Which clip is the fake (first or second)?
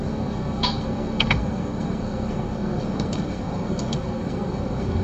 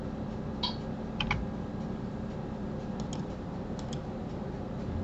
first